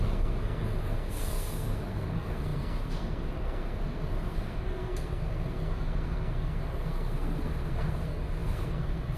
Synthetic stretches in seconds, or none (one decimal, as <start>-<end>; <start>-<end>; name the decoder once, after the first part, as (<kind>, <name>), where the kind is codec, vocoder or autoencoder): 0.0-9.2 (codec, SNAC)